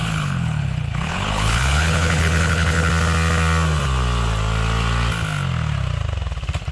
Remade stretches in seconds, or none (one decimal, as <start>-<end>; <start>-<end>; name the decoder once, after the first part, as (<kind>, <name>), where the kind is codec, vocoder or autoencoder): 0.0-2.9 (codec, HILCodec)